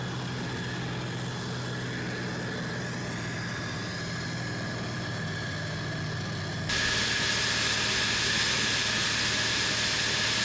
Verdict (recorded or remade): recorded